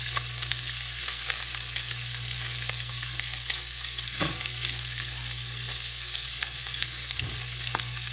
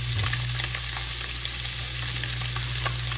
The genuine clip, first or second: second